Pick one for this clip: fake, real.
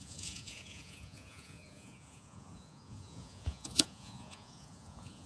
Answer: fake